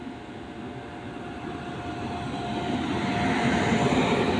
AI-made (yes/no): no